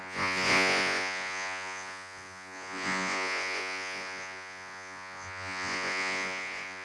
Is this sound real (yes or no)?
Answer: no